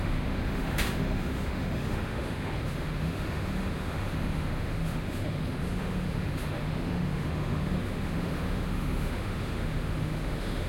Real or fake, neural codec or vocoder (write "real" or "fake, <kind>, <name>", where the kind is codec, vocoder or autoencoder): fake, autoencoder, DAC-VAE